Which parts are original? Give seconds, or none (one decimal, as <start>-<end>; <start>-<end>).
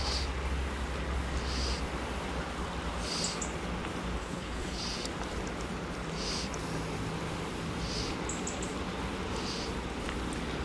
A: 0.0-4.2; 4.8-10.6